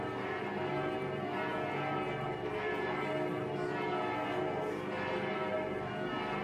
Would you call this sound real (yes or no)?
yes